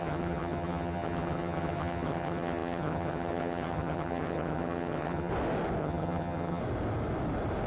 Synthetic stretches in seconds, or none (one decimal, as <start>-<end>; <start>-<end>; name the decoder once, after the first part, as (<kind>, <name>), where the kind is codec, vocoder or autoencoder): 0.0-5.3 (vocoder, HiFi-GAN); 5.8-6.6